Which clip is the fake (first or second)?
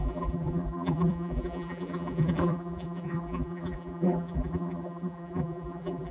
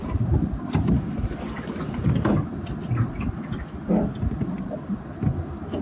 first